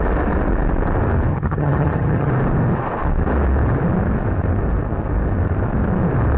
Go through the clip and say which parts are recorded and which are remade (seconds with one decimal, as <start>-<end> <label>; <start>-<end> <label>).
0.0-1.3 recorded; 1.3-2.3 remade; 2.3-6.4 recorded

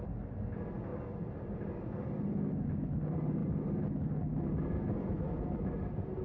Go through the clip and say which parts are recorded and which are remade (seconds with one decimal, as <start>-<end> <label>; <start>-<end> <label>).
0.0-6.2 recorded